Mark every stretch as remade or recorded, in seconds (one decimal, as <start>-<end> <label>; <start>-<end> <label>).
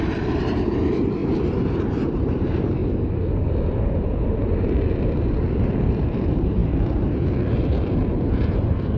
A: 0.0-2.8 remade; 2.8-5.1 recorded; 5.1-9.0 remade